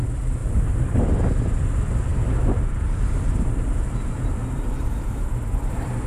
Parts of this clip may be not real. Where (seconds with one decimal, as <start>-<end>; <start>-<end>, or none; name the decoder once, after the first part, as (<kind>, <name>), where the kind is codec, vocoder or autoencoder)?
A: 0.4-1.0 (vocoder, BigVGAN v2); 2.1-6.1